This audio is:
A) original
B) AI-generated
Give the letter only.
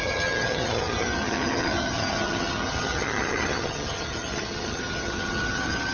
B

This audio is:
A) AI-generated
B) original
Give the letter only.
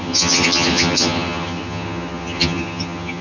A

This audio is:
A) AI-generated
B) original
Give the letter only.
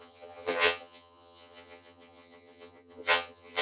A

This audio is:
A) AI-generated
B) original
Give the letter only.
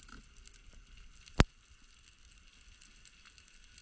B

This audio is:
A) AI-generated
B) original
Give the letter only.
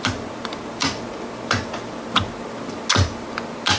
B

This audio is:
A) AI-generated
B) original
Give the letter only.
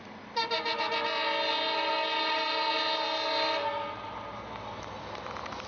B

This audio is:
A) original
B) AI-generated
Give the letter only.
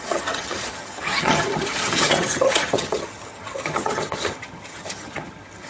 B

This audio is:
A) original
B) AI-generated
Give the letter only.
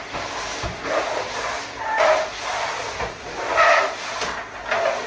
A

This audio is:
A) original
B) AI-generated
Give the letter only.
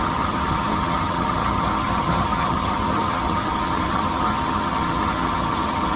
B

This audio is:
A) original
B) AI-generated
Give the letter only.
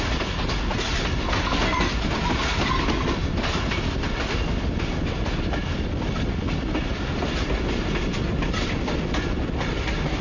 A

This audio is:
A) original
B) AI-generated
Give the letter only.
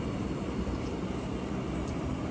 A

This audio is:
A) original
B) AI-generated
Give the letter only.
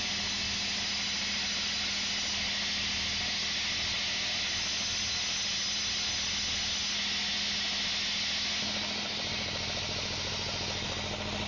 A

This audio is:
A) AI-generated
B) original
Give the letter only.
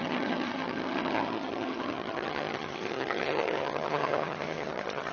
A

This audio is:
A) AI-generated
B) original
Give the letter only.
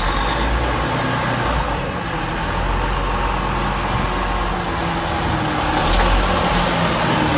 B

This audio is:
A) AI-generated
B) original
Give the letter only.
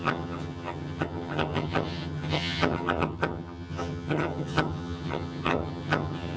A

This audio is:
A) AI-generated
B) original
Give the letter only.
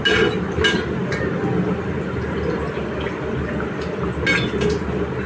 B